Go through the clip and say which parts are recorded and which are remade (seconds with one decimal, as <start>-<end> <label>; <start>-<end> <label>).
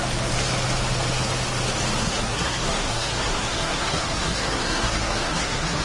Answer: 0.0-2.0 recorded; 2.0-5.8 remade